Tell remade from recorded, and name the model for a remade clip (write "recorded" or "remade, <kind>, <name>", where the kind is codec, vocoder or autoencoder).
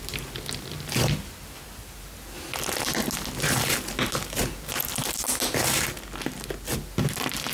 recorded